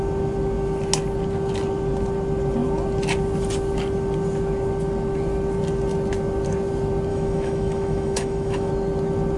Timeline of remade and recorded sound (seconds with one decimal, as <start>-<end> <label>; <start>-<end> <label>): 0.0-7.1 recorded; 7.1-8.7 remade; 8.7-9.4 recorded